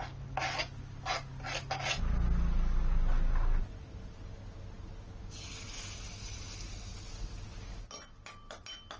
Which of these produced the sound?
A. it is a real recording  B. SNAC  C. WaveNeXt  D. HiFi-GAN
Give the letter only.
A